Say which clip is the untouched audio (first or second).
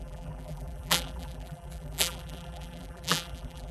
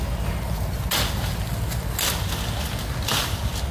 second